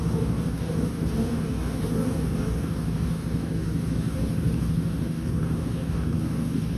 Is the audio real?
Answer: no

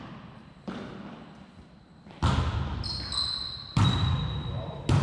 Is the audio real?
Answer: yes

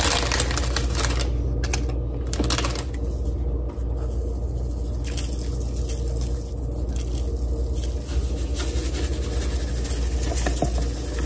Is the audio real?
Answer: yes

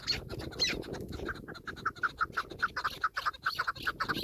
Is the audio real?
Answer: yes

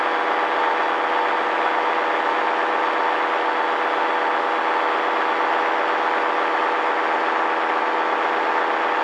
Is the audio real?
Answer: yes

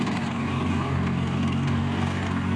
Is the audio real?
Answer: no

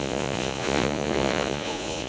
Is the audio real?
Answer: no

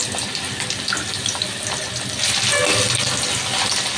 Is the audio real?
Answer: yes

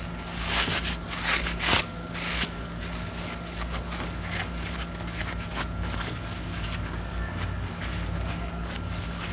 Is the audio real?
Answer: no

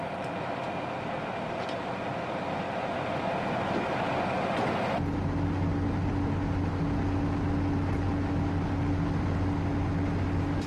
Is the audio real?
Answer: yes